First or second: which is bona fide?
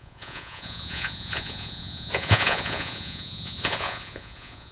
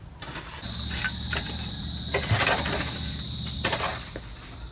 second